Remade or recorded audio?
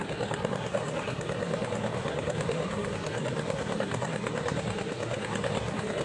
remade